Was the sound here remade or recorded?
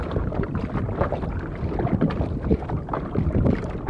recorded